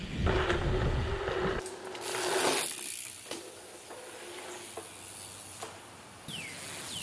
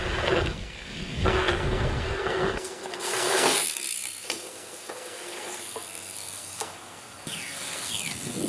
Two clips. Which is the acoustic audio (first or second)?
first